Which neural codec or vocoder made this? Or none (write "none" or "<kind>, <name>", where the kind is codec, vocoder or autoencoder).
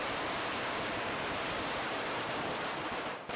vocoder, BigVGAN v2